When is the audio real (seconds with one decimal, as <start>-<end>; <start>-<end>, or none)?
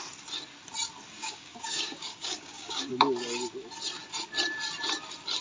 0.0-1.2; 2.9-5.4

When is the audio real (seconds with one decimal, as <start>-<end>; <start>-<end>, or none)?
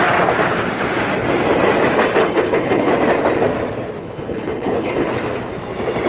0.0-2.2; 2.9-4.0; 5.1-6.1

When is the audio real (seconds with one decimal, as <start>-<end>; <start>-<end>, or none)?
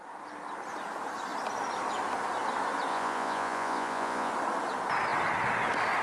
0.0-2.9; 4.3-6.0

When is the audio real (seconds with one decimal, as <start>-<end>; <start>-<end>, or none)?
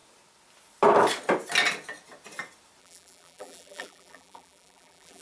0.0-2.8